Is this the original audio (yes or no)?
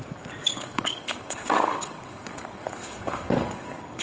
no